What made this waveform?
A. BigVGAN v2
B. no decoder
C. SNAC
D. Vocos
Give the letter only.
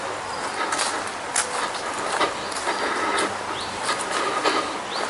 B